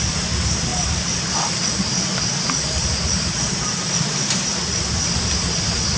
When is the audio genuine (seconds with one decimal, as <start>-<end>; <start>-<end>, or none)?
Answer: 0.0-6.0